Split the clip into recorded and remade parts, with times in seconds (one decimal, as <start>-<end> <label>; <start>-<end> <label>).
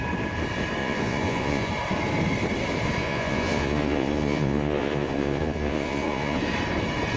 0.0-0.8 recorded; 0.8-1.7 remade; 1.7-3.0 recorded; 3.0-6.4 remade; 6.4-7.2 recorded